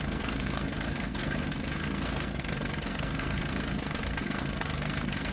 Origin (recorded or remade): remade